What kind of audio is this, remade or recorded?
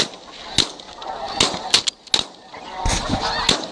recorded